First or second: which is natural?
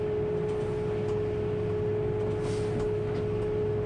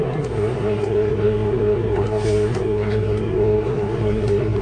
first